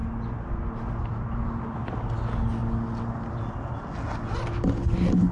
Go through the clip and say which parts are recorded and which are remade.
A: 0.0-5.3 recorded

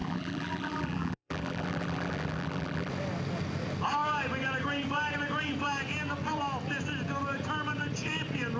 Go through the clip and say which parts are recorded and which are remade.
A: 0.0-2.9 remade; 2.9-8.6 recorded

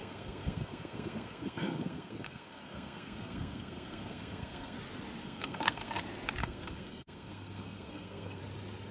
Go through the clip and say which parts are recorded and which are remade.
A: 0.0-4.8 remade; 4.8-5.2 recorded; 5.2-5.9 remade; 5.9-6.4 recorded; 6.4-8.4 remade; 8.4-8.9 recorded

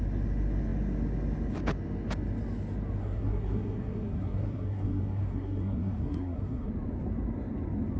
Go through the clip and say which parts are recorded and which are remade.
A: 0.0-3.0 recorded; 3.0-6.7 remade; 6.7-8.0 recorded